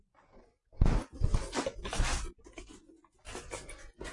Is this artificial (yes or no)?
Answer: no